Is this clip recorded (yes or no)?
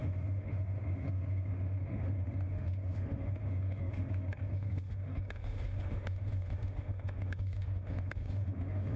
no